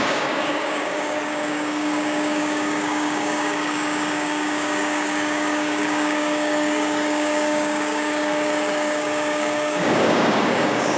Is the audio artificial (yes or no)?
yes